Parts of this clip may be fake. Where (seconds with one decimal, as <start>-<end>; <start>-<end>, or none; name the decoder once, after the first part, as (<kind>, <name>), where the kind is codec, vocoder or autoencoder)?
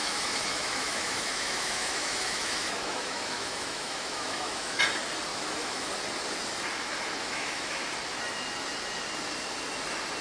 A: 0.0-4.8 (autoencoder, DAC-VAE); 5.3-5.9; 7.2-7.8